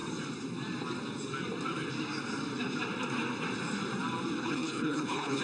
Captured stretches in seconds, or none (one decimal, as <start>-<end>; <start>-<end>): 0.0-4.4